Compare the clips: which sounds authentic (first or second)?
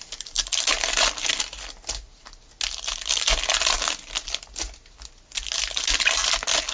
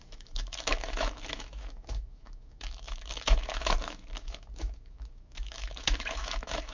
first